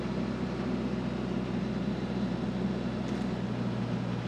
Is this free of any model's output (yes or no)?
yes